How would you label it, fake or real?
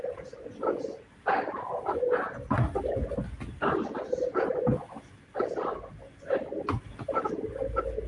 real